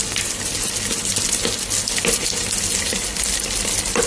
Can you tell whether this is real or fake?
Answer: real